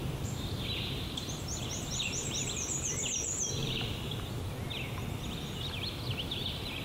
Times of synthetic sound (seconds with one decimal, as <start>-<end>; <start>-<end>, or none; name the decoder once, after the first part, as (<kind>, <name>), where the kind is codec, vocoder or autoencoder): 0.0-3.0 (vocoder, BigVGAN v2); 3.6-4.4